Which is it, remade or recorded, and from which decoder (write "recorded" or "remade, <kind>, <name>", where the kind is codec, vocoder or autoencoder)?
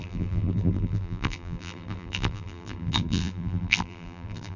remade, vocoder, BigVGAN v2